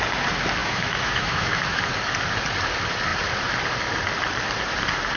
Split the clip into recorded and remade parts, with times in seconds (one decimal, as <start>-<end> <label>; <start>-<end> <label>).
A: 0.0-0.6 recorded; 0.6-1.8 remade; 1.8-5.2 recorded